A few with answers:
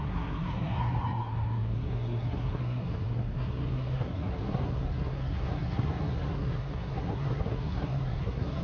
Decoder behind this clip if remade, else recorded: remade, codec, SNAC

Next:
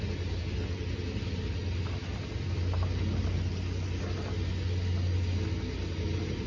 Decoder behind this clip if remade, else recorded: recorded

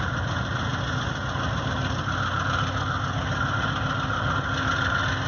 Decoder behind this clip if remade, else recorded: recorded